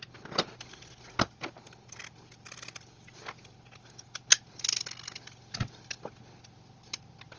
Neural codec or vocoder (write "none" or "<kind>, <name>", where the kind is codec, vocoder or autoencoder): none